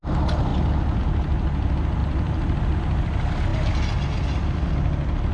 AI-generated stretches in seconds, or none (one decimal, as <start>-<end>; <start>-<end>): 2.0-2.8